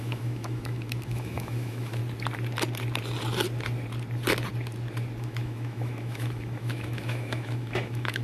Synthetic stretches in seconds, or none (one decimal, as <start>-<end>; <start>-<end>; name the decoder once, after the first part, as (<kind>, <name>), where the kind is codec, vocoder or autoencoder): 0.0-2.0 (autoencoder, DAC-VAE); 5.2-8.2